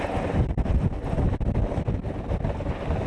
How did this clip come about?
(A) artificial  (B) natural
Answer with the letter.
B